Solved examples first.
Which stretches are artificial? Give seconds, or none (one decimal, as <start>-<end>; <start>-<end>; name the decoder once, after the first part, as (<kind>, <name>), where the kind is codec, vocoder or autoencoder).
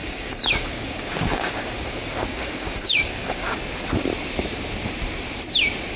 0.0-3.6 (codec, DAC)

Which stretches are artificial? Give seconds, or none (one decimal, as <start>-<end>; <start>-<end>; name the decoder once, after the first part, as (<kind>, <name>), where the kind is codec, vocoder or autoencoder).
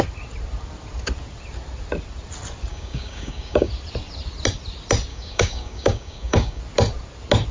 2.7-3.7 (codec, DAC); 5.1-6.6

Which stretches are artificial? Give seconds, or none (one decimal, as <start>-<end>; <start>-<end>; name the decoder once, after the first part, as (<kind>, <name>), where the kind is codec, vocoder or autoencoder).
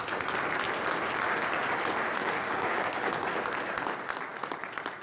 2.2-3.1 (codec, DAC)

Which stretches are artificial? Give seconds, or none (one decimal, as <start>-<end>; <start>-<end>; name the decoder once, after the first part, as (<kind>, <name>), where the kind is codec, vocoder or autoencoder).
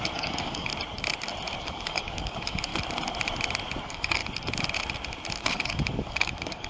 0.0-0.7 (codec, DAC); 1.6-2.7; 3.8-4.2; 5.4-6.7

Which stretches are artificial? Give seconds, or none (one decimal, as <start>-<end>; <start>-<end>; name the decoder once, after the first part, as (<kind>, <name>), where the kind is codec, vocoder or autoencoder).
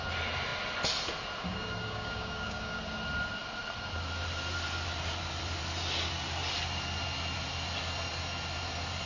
1.5-2.8 (codec, DAC)